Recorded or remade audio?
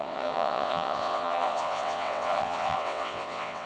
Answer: remade